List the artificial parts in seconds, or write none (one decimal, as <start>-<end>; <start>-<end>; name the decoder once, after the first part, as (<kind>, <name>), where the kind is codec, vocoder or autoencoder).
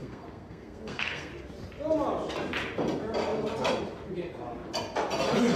0.0-1.3 (codec, SNAC)